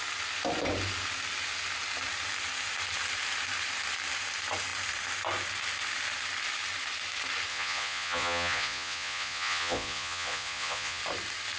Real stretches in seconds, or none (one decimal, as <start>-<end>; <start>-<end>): 0.0-7.5; 11.0-11.6

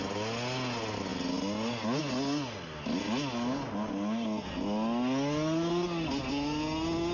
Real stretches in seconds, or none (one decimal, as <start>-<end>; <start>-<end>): 0.0-7.1